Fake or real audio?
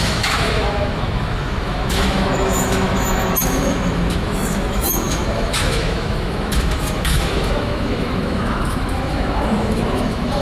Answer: fake